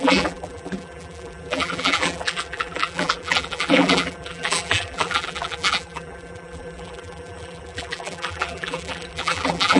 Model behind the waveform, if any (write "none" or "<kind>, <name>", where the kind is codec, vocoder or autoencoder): vocoder, BigVGAN v2